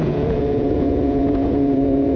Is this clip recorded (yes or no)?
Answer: no